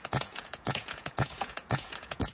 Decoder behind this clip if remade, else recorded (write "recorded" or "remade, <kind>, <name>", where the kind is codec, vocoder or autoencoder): remade, vocoder, Vocos